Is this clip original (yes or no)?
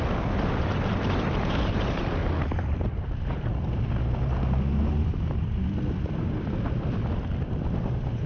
yes